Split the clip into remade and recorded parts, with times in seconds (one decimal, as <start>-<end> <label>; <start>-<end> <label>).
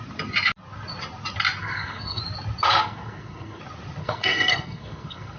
0.0-1.6 recorded; 1.6-2.2 remade; 2.2-2.8 recorded; 2.8-3.6 remade; 3.6-4.0 recorded; 4.0-5.4 remade